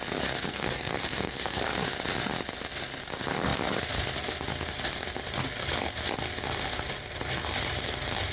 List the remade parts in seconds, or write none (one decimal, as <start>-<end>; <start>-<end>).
0.5-1.6